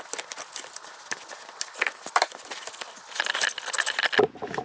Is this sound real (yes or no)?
yes